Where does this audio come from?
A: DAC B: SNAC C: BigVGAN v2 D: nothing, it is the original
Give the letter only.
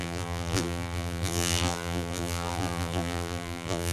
C